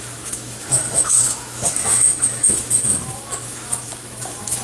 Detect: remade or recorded remade